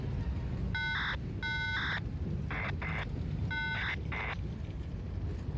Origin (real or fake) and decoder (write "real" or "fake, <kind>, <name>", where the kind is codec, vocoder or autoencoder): real